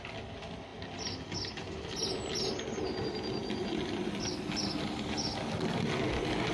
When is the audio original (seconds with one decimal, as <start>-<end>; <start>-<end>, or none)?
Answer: 0.0-6.5